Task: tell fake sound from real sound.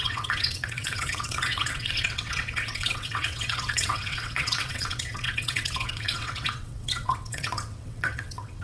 fake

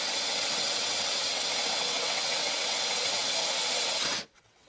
fake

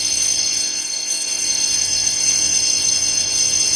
fake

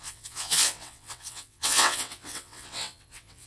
fake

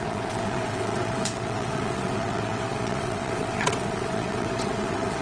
fake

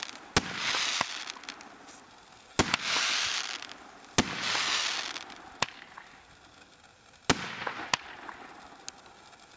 real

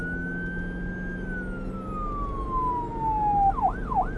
real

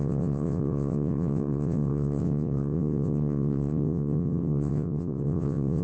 fake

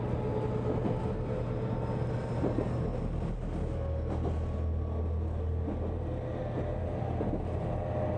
real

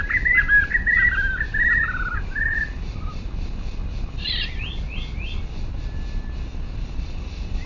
real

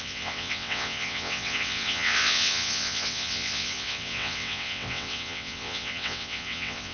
fake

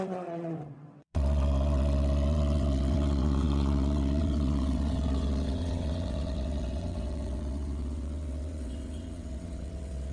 fake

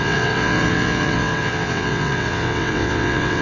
fake